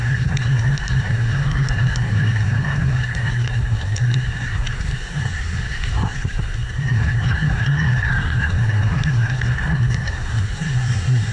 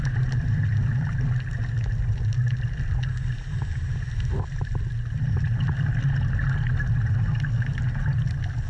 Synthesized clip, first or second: first